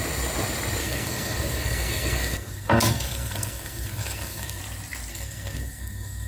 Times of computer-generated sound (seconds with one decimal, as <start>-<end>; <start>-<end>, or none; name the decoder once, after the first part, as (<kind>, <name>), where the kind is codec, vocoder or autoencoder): 0.8-4.6 (codec, SNAC); 5.1-6.3

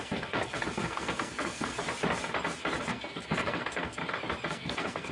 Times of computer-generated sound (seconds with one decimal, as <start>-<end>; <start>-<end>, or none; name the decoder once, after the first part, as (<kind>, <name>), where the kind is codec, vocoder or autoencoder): 0.0-1.8 (codec, SNAC); 2.8-4.0; 4.5-5.1

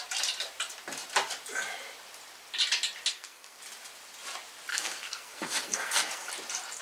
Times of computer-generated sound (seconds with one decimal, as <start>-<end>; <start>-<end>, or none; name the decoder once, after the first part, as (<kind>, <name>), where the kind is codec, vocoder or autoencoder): 3.1-3.6 (codec, SNAC); 4.7-6.3

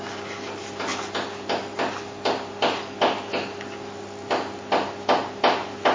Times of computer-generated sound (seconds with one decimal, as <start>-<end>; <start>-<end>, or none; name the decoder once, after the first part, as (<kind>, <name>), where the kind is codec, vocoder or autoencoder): none